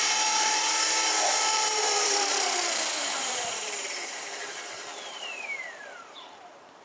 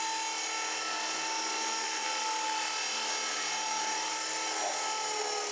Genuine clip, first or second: second